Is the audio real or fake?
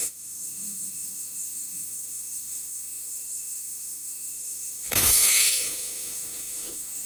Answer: fake